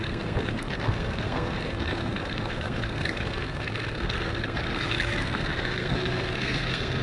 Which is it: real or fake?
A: fake